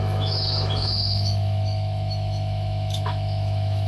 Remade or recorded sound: remade